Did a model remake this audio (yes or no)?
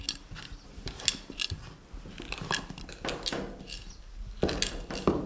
no